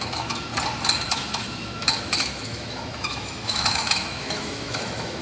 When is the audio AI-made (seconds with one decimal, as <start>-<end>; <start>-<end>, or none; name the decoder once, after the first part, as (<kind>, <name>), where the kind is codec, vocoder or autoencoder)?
0.0-0.5 (autoencoder, DAC-VAE); 1.1-5.2